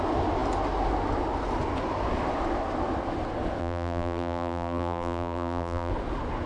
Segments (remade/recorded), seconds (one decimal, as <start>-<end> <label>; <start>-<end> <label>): 0.0-3.6 recorded; 3.6-5.9 remade; 5.9-6.5 recorded